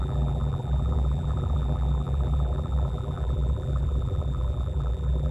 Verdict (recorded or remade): remade